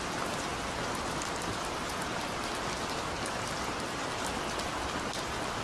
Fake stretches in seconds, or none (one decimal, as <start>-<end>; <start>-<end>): none